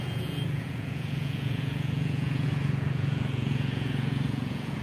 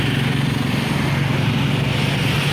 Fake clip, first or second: first